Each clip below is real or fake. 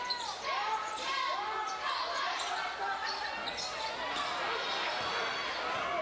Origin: real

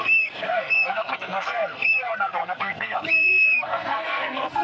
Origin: fake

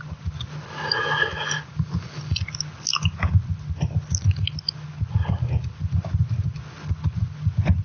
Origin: real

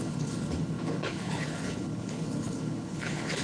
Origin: fake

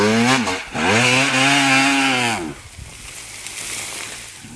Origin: real